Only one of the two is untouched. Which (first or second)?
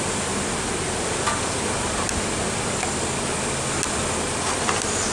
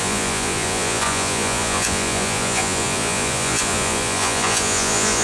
first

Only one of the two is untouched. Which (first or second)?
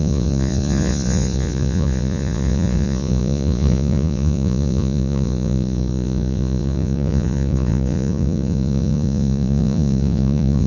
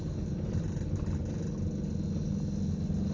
second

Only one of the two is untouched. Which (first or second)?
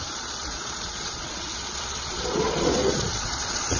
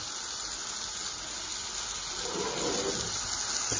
second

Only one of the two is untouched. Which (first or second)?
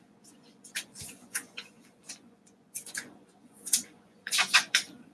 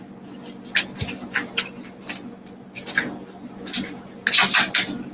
second